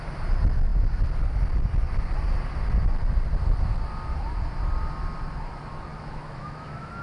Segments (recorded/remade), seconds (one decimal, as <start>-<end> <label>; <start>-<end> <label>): 0.0-5.9 recorded; 5.9-7.0 remade